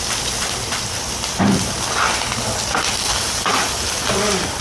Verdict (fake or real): real